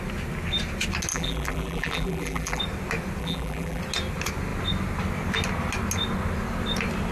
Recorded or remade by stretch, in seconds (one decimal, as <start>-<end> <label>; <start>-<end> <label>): 0.0-1.1 recorded; 1.1-2.6 remade; 2.6-3.2 recorded; 3.2-3.8 remade; 3.8-7.1 recorded